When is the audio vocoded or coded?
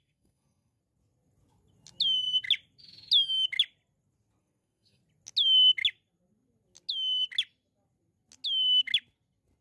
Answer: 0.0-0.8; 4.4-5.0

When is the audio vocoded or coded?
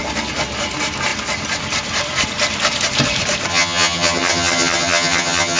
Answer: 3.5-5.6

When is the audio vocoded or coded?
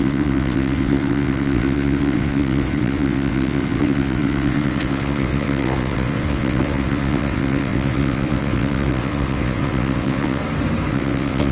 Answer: 0.0-10.4; 10.9-11.5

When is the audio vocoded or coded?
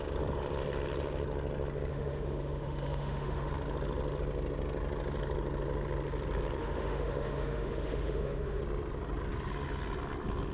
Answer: 1.9-3.5; 6.6-8.6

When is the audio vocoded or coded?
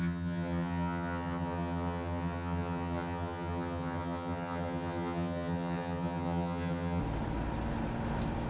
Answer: 0.0-7.0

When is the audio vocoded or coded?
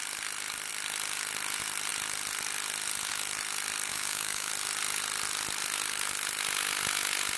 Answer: 3.9-4.5